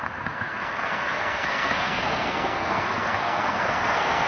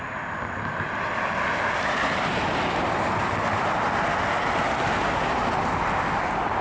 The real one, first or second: second